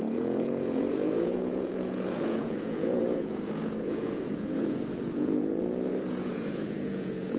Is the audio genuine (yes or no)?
no